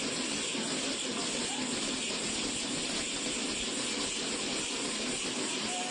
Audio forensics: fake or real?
real